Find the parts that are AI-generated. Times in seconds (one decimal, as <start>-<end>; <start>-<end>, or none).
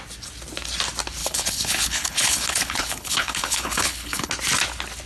1.2-4.3